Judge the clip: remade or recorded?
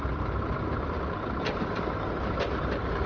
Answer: remade